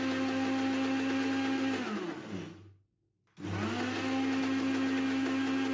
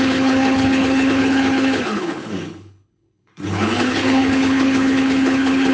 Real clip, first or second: first